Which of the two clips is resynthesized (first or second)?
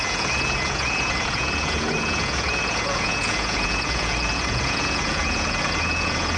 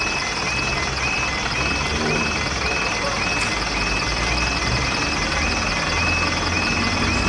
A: first